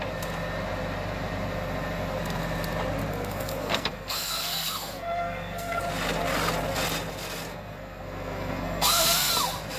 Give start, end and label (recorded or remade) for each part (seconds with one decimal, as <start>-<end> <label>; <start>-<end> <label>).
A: 0.0-3.1 recorded; 3.1-5.8 remade; 5.8-7.5 recorded; 7.5-9.3 remade; 9.3-9.8 recorded